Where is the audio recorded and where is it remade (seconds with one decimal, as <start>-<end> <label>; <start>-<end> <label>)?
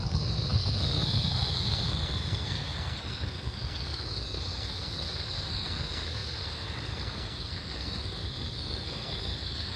0.0-9.8 remade